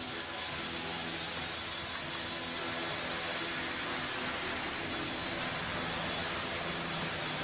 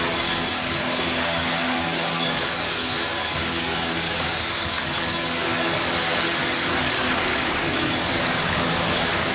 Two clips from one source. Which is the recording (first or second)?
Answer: first